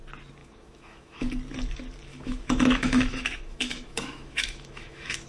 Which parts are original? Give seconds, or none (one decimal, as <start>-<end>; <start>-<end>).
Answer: 0.0-0.4; 1.3-2.1